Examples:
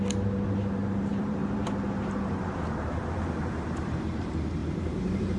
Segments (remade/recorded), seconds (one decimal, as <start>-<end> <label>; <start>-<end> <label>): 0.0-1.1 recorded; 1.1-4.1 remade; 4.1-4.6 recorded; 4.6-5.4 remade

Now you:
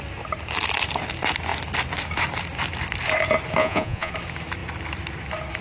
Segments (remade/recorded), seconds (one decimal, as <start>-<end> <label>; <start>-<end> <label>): 0.0-3.6 recorded; 3.6-4.1 remade; 4.1-5.6 recorded

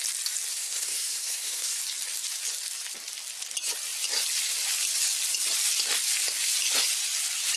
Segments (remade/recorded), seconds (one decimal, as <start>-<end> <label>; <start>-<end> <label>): 0.0-0.5 recorded; 0.5-1.8 remade; 1.8-7.6 recorded

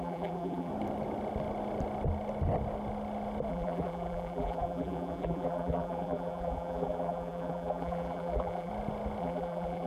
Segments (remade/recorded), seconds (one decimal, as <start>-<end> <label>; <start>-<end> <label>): 0.0-0.7 remade; 0.7-3.5 recorded; 3.5-8.7 remade; 8.7-9.2 recorded; 9.2-9.9 remade